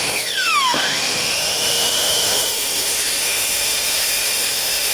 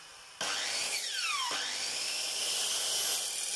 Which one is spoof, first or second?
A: first